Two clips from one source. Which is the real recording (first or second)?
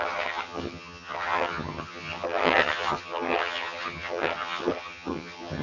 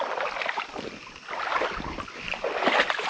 second